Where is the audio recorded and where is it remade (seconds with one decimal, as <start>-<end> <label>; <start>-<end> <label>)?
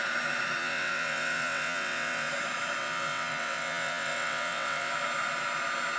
0.0-0.6 recorded; 0.6-2.3 remade; 2.3-2.8 recorded; 2.8-4.9 remade; 4.9-6.0 recorded